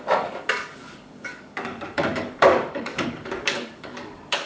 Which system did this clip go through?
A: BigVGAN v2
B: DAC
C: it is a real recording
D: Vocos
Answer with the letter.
B